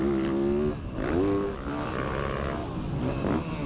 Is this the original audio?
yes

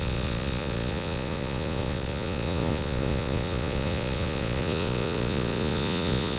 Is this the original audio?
no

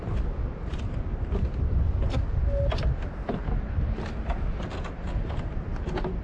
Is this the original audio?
yes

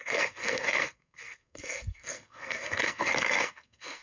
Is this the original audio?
no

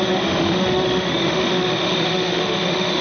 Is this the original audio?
no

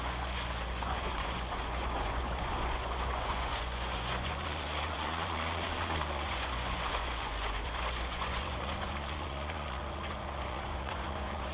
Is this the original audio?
no